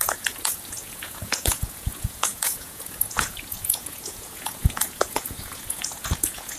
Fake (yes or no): yes